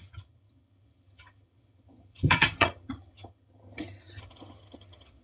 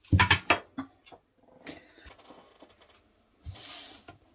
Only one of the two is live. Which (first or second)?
second